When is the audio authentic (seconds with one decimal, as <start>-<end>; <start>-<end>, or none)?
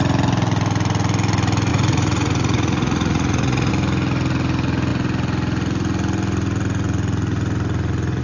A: 0.0-1.7; 3.7-8.2